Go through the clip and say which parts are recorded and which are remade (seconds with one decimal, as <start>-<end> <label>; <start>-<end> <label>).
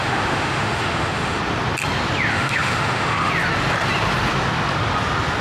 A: 0.0-1.4 remade; 1.4-2.3 recorded; 2.3-3.3 remade; 3.3-5.4 recorded